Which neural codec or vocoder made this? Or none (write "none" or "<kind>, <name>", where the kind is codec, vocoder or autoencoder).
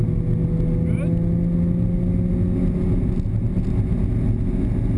none